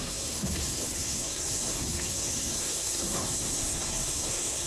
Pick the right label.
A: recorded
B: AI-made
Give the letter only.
B